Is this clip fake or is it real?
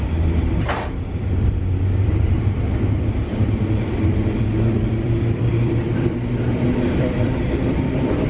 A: fake